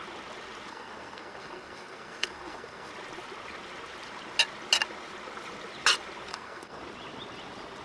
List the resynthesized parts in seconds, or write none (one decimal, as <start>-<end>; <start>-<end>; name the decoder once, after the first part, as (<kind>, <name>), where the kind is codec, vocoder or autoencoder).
0.7-2.9 (codec, SNAC); 6.3-6.8